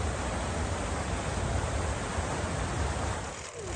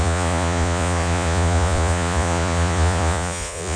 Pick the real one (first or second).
first